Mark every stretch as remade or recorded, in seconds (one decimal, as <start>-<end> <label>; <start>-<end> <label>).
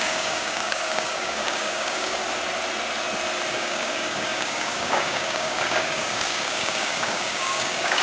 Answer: 0.0-2.2 remade; 2.2-3.5 recorded; 3.5-8.0 remade